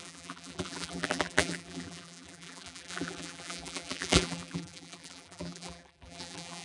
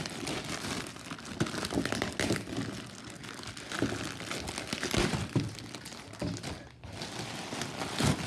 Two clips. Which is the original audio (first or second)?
second